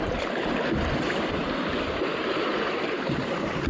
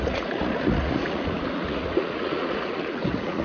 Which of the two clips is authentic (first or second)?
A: first